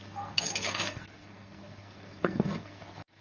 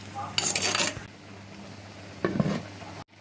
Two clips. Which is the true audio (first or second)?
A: second